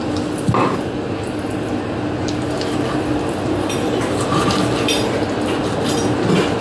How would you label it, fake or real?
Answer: real